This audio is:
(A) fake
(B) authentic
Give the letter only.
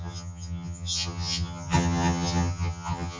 A